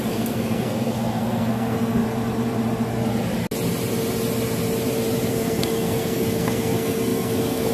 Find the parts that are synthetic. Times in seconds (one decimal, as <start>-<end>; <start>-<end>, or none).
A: 0.0-2.0; 5.3-7.7

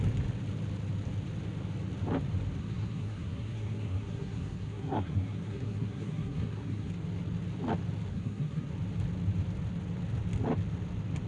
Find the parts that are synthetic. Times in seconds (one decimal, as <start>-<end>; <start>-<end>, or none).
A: 2.6-6.9; 8.1-8.7